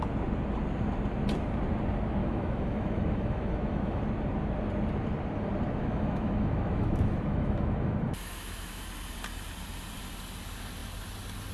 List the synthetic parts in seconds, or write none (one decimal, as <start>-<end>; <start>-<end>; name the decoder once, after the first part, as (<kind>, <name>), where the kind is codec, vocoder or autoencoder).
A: 2.2-4.0 (autoencoder, DAC-VAE); 5.8-8.8